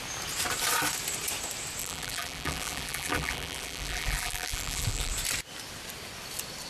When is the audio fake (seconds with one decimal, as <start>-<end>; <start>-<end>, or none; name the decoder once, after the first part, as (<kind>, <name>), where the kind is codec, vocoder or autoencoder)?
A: 1.8-5.1 (vocoder, BigVGAN v2)